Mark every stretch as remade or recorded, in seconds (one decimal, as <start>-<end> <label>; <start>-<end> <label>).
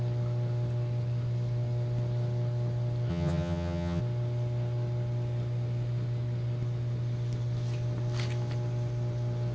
0.0-3.1 recorded; 3.1-4.0 remade; 4.0-9.5 recorded